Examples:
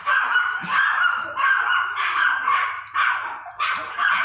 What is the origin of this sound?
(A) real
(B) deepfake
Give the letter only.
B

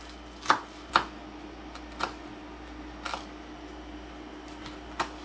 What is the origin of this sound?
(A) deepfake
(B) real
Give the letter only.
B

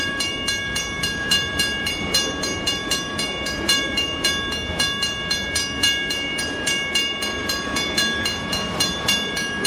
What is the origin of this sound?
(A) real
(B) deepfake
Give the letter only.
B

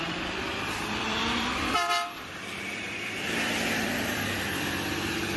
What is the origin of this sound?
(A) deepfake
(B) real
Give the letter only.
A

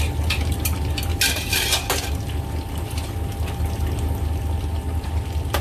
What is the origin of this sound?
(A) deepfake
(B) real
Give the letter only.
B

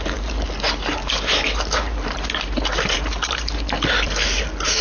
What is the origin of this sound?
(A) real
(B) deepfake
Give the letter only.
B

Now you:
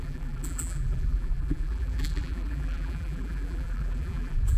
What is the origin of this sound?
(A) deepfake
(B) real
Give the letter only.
A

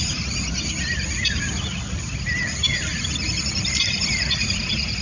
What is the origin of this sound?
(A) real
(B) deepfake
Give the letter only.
B